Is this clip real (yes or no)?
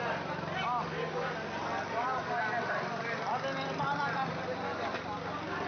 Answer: no